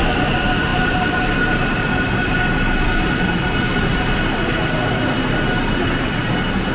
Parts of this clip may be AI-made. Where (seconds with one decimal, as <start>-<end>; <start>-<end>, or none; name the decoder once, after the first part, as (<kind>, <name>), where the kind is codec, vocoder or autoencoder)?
none